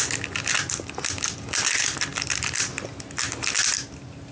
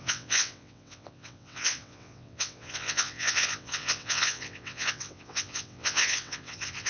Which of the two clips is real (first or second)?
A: first